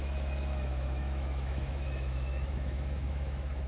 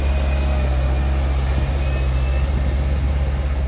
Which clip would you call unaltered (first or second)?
second